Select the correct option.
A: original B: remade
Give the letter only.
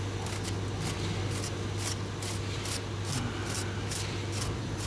A